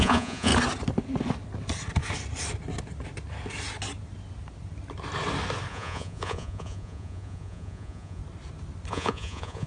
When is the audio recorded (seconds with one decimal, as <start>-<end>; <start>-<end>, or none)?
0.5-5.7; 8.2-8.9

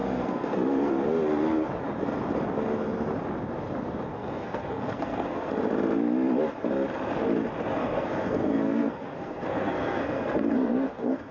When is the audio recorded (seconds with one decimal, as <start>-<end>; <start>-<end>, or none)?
0.9-4.1; 5.5-7.8

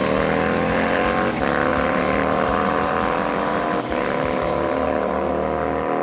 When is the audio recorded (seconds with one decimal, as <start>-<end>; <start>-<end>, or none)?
0.0-1.7; 5.3-6.0

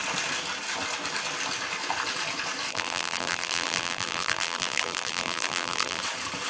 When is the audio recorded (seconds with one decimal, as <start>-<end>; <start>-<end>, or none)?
0.0-2.7; 6.0-6.5